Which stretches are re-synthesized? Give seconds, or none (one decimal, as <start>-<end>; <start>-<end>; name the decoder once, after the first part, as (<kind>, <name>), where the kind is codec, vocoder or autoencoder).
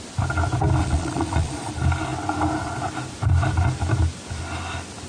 0.8-1.7 (vocoder, Vocos)